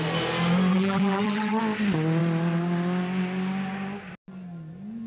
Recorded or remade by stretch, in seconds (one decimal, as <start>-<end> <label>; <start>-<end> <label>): 0.0-0.7 recorded; 0.7-1.6 remade; 1.6-5.1 recorded